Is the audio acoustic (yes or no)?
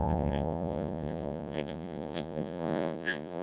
no